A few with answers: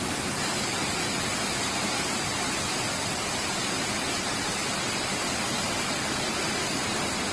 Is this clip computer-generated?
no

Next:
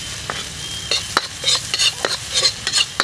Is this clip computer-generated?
no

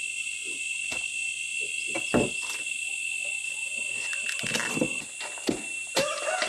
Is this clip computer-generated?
no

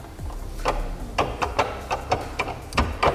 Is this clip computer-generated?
no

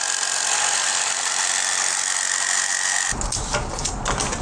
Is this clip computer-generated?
no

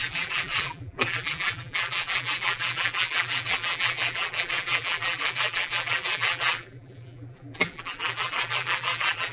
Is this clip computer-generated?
yes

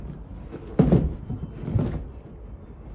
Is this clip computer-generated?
no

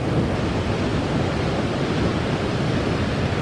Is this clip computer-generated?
no